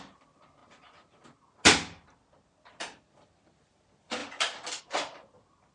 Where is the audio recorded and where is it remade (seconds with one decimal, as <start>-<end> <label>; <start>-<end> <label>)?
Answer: 0.0-5.7 recorded